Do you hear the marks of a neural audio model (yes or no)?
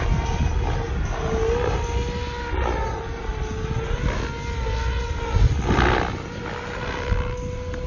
no